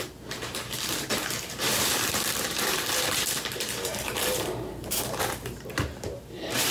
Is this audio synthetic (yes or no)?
yes